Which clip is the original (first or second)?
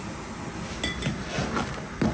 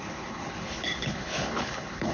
first